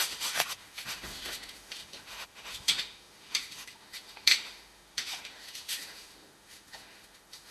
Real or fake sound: fake